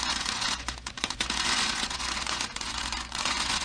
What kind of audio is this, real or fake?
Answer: fake